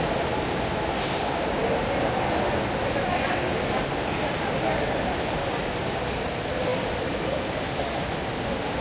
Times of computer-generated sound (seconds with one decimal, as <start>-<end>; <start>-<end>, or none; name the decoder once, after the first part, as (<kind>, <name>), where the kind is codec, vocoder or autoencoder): none